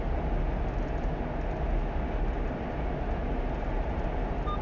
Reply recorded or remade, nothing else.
recorded